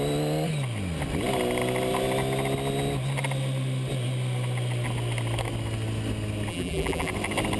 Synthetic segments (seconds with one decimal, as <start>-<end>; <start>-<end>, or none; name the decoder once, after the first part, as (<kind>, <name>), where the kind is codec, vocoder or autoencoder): 6.5-7.1 (vocoder, BigVGAN v2)

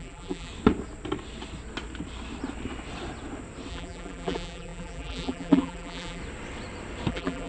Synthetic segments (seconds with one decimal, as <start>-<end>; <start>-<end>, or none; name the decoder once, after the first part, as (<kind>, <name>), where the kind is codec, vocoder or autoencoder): 0.0-0.5 (vocoder, BigVGAN v2); 3.7-6.2; 7.1-7.5

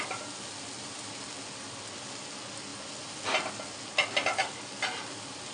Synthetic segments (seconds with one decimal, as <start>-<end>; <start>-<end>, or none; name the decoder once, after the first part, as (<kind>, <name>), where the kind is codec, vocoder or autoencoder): none

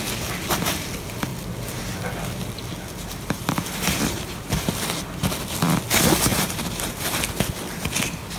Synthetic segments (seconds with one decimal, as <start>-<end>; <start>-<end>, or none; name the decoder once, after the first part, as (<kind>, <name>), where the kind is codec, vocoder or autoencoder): 3.0-4.7 (vocoder, BigVGAN v2); 6.3-7.2